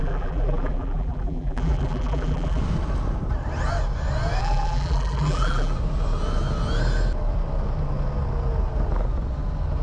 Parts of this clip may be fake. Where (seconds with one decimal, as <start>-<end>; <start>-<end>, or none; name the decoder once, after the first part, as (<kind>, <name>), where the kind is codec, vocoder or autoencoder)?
0.0-2.6 (vocoder, BigVGAN v2); 4.4-5.7